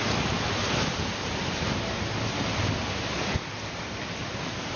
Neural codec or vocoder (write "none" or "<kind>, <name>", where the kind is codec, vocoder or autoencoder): none